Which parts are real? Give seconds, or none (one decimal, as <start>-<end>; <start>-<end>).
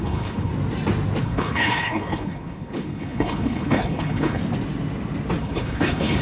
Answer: 0.5-1.2; 4.4-5.4